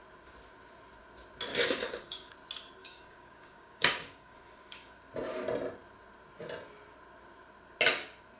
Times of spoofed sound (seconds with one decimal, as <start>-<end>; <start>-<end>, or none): 1.5-2.3; 2.8-5.0

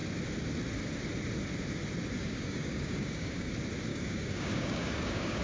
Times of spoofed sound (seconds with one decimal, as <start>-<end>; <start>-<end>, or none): 2.2-3.5; 3.9-5.4